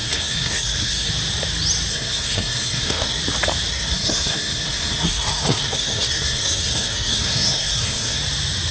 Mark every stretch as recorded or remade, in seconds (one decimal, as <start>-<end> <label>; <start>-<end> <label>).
0.0-1.1 remade; 1.1-1.9 recorded; 1.9-3.2 remade; 3.2-3.7 recorded; 3.7-8.2 remade; 8.2-8.7 recorded